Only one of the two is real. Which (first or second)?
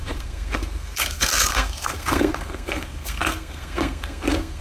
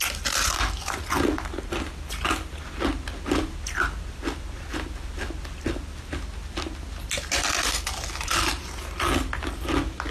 second